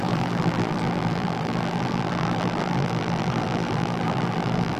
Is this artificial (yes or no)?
yes